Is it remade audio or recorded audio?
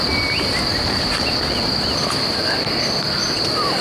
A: recorded